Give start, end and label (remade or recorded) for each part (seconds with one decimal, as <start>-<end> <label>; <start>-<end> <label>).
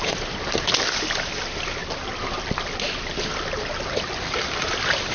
0.0-5.1 recorded